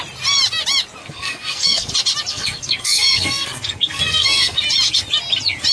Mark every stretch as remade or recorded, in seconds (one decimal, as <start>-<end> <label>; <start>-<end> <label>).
0.0-1.0 recorded; 1.0-1.9 remade; 1.9-2.3 recorded; 2.3-4.6 remade; 4.6-5.7 recorded